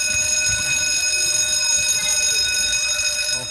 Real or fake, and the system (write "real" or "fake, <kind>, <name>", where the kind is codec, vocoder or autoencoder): real